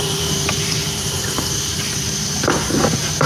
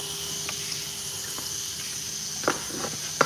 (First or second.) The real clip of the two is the second